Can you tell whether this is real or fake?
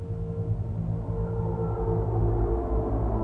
real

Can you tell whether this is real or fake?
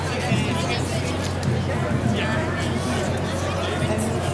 real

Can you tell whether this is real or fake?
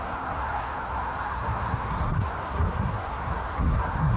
fake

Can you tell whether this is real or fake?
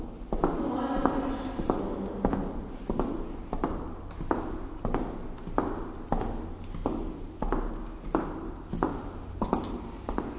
real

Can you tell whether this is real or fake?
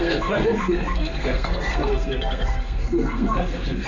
fake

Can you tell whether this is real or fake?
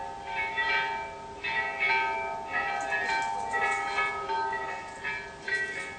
real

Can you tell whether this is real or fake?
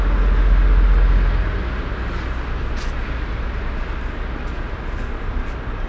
real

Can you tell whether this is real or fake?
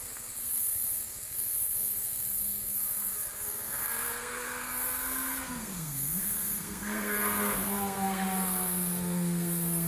fake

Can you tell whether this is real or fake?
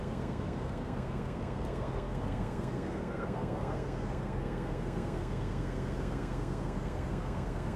fake